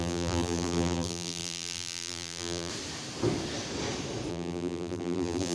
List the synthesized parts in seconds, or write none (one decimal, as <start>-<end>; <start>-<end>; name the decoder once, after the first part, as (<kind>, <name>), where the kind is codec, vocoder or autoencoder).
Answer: 0.0-2.7 (vocoder, BigVGAN v2); 4.3-5.5